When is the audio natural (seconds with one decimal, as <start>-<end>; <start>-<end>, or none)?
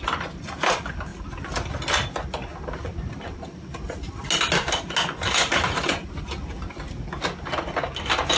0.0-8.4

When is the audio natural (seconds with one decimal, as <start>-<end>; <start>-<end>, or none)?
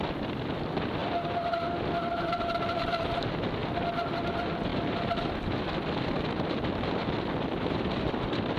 3.6-4.1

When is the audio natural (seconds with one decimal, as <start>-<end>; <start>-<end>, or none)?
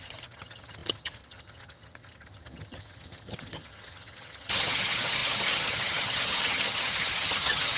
none